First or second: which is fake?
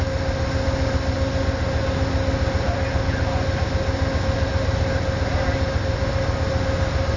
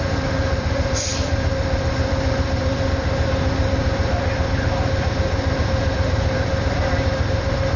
second